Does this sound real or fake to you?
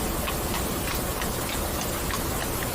real